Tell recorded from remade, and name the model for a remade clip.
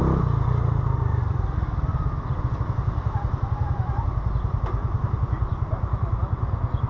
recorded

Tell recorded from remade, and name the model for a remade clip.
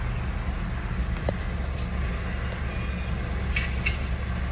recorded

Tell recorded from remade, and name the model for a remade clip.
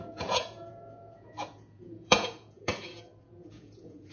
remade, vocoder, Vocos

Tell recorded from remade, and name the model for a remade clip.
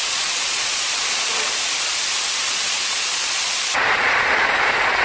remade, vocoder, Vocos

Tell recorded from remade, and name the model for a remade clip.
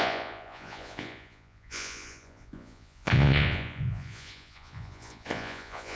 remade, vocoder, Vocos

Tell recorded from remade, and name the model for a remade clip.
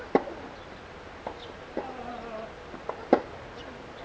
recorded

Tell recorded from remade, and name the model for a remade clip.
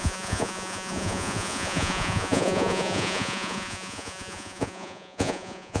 remade, vocoder, Vocos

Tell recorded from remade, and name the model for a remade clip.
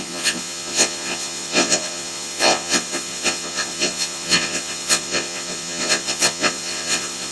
remade, vocoder, Vocos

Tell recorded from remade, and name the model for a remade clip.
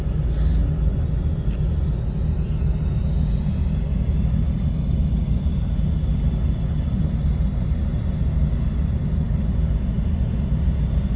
recorded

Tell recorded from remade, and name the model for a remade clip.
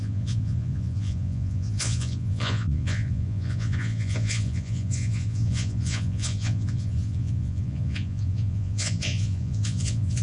remade, vocoder, Vocos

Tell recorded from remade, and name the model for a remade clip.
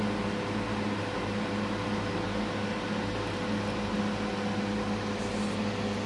recorded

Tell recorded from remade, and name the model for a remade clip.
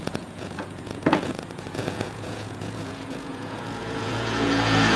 remade, vocoder, Vocos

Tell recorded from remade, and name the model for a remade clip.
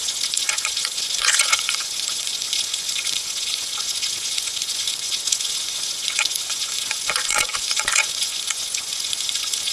remade, vocoder, Vocos